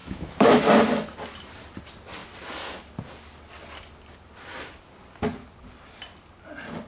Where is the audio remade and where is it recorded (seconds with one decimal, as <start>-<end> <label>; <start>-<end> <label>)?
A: 0.0-0.7 remade; 0.7-6.9 recorded

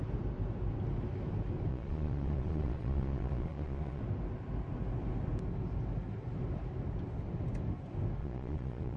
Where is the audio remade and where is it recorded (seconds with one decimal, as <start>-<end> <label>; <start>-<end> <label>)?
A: 0.0-1.7 recorded; 1.7-4.0 remade; 4.0-8.2 recorded; 8.2-9.0 remade

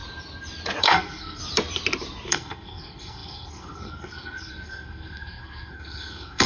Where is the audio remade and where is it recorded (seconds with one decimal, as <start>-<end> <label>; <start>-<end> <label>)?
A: 0.0-0.8 recorded; 0.8-1.4 remade; 1.4-2.3 recorded; 2.3-6.5 remade

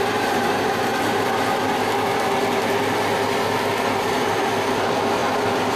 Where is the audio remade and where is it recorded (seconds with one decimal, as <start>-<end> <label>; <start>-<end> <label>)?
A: 0.0-0.9 remade; 0.9-4.0 recorded; 4.0-5.2 remade; 5.2-5.8 recorded

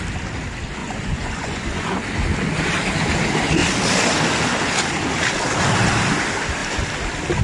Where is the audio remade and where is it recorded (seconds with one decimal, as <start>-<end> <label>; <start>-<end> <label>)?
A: 0.0-0.8 recorded; 0.8-2.0 remade; 2.0-7.4 recorded